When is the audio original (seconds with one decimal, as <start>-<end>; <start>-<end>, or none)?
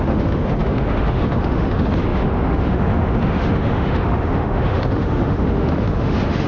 none